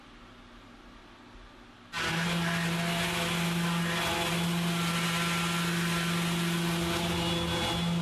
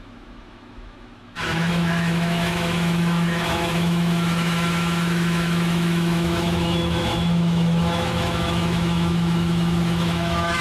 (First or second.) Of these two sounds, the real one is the first